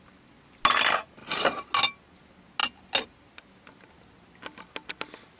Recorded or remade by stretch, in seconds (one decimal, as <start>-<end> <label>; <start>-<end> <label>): 0.0-5.4 recorded

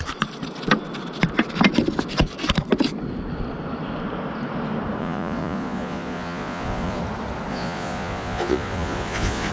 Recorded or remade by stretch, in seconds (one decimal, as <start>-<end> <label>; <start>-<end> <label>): 0.0-5.0 recorded; 5.0-7.0 remade; 7.0-7.5 recorded; 7.5-9.5 remade